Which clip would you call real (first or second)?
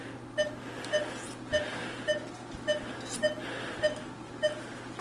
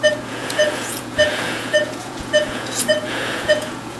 first